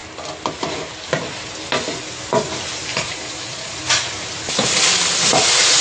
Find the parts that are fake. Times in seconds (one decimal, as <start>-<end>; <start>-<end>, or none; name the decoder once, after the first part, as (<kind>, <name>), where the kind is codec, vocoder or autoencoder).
2.9-3.8 (vocoder, Vocos)